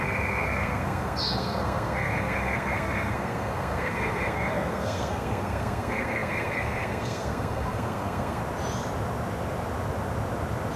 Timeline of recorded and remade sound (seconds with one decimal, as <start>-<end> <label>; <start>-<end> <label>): 0.0-8.4 remade; 8.4-10.8 recorded